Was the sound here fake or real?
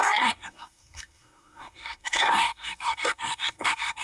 fake